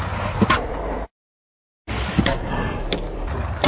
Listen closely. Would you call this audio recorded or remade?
recorded